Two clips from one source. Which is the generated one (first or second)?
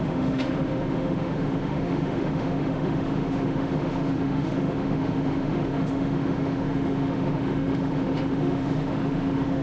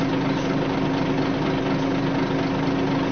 first